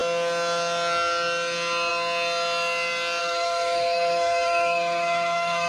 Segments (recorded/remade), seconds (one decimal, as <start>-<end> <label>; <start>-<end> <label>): 0.0-3.2 recorded; 3.2-5.7 remade